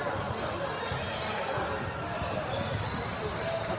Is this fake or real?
real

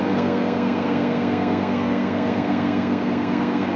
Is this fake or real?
fake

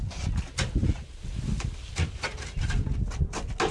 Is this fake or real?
real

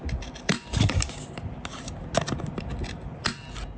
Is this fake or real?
real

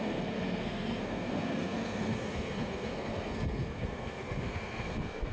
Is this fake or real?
fake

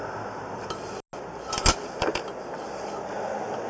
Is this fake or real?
real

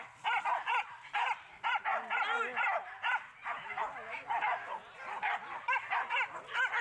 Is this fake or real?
real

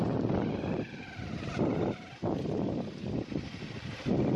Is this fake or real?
real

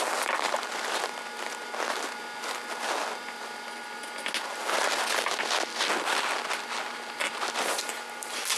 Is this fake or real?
real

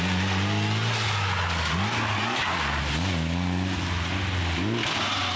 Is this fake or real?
real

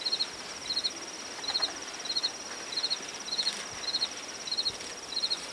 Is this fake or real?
real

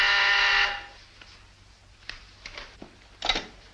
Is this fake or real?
real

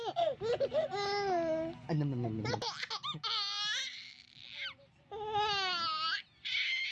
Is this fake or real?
real